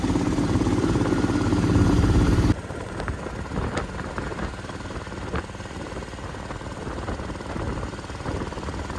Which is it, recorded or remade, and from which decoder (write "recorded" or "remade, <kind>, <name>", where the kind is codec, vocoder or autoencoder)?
remade, vocoder, BigVGAN v2